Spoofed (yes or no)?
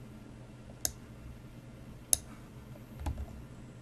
no